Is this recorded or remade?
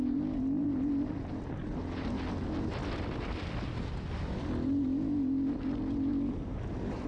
recorded